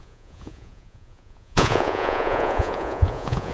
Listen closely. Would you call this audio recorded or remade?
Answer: remade